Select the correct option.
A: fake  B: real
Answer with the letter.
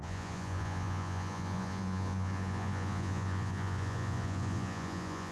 A